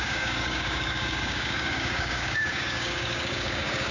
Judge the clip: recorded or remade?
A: remade